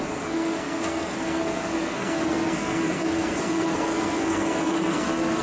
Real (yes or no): no